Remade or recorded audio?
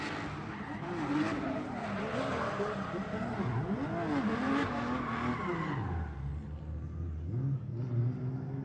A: recorded